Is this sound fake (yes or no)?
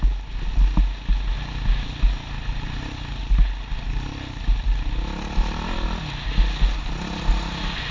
no